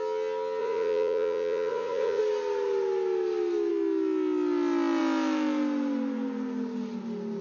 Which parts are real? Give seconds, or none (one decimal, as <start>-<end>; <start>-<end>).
0.0-0.6; 2.2-7.4